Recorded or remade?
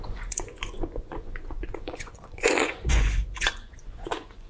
remade